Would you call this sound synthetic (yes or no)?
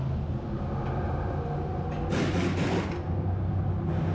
no